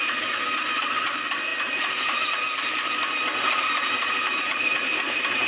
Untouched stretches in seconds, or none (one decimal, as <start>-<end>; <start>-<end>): 0.0-4.0; 5.0-5.5